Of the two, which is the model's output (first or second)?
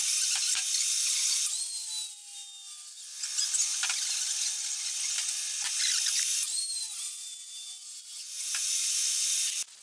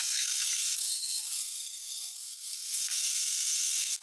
second